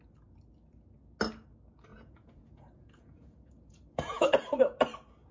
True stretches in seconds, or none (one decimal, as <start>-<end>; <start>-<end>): 0.0-1.9; 4.6-5.3